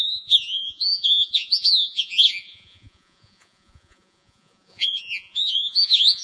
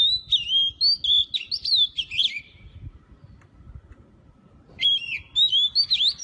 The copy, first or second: first